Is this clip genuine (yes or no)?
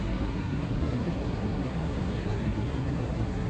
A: no